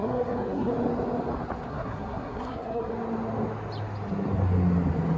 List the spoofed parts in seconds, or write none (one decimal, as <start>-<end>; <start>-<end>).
0.0-0.7; 1.7-2.9